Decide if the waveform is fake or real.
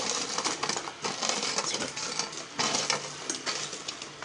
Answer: real